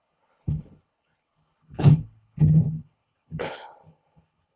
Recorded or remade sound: remade